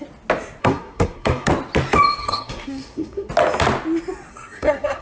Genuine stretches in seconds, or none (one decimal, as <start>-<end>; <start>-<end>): 0.0-0.6; 1.5-2.2; 3.3-4.3